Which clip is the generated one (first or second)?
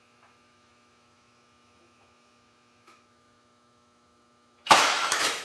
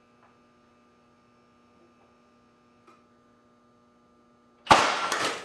first